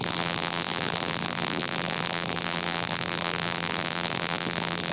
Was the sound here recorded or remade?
remade